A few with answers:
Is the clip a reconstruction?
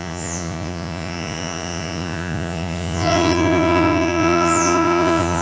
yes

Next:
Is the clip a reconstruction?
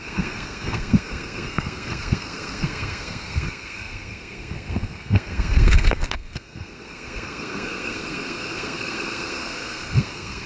yes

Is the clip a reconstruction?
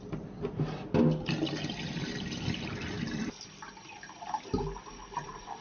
no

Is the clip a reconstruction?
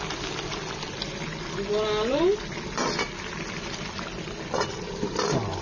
no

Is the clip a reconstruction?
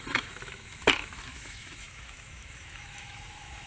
yes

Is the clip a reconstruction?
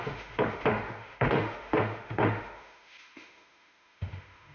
yes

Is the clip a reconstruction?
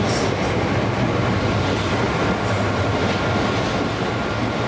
no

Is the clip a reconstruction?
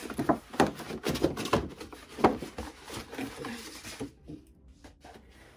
no